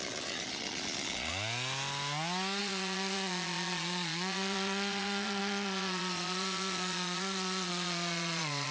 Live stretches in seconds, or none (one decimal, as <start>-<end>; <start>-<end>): 1.3-2.6

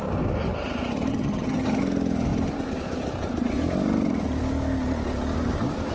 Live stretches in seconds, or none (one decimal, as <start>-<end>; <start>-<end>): 0.0-1.1; 1.8-5.9

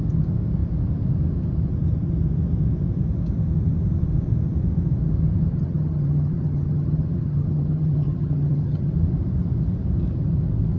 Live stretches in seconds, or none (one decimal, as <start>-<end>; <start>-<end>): 0.0-5.5; 8.9-10.8

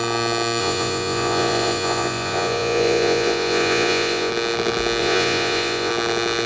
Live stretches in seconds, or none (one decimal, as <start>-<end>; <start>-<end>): 0.0-0.6; 4.3-5.0; 5.9-6.5

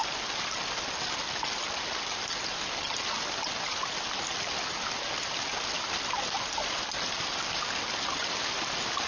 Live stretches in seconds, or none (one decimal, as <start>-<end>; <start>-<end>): 0.0-9.1

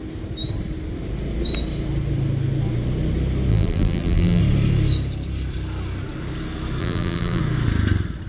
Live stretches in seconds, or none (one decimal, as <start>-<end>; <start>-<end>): 0.0-3.5; 4.4-6.8; 7.4-8.3

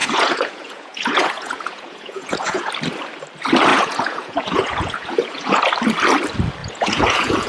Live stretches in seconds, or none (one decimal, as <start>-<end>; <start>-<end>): 2.7-3.7; 5.6-6.6